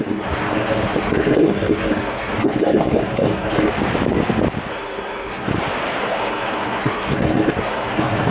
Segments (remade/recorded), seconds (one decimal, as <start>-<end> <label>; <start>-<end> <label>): 0.0-3.7 remade; 3.7-4.7 recorded; 4.7-5.5 remade; 5.5-6.0 recorded; 6.0-8.3 remade